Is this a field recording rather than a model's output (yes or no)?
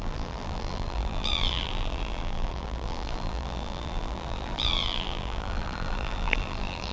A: no